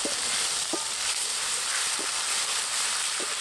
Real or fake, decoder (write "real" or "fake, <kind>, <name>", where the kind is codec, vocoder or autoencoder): fake, vocoder, BigVGAN v2